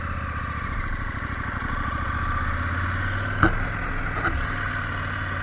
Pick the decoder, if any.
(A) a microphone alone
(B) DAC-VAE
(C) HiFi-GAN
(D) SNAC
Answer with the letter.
A